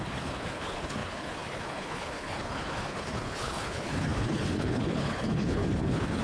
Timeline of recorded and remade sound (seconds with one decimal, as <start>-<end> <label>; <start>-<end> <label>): 0.0-6.2 remade

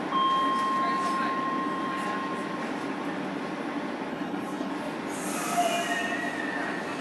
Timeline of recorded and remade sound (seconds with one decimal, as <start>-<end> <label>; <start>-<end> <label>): 0.0-4.1 recorded; 4.1-4.7 remade; 4.7-7.0 recorded